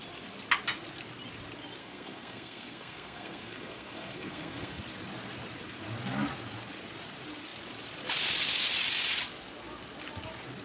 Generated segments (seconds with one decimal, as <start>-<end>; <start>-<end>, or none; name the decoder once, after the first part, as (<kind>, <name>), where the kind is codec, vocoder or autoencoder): 1.8-4.8 (codec, SNAC)